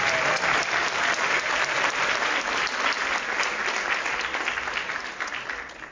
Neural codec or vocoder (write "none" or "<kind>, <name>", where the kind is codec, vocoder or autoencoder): none